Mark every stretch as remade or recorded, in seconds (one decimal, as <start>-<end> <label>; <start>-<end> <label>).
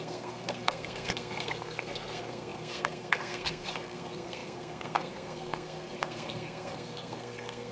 0.0-7.7 remade